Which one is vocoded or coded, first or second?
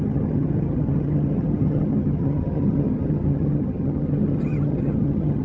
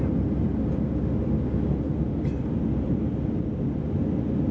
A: first